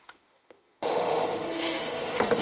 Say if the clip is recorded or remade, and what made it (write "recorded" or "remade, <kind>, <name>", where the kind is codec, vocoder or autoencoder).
remade, autoencoder, DAC-VAE